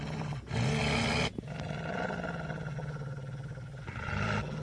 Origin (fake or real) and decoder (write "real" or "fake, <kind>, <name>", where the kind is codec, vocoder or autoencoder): real